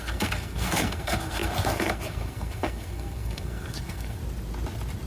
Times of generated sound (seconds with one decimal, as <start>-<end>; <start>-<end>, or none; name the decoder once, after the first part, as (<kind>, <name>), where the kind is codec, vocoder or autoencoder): 0.0-4.2 (codec, SNAC)